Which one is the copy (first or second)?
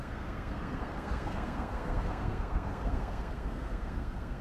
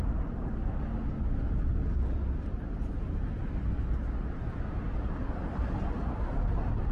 first